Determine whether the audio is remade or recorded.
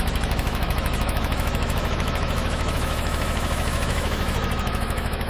remade